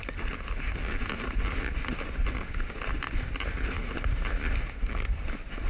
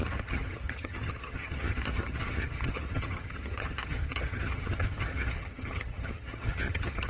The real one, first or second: first